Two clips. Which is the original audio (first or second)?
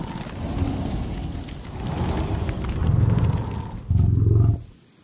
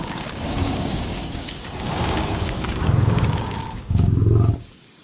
first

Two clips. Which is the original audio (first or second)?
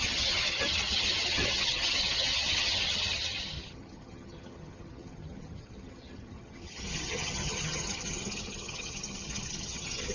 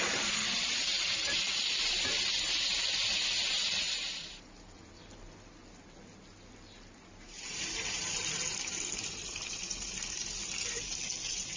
second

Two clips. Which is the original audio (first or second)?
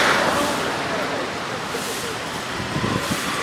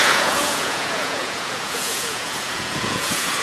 first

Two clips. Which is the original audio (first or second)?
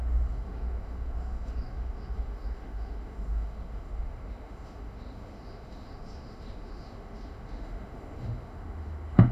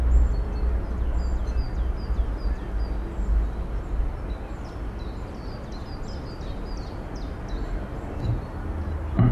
second